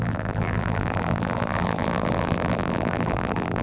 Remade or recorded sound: remade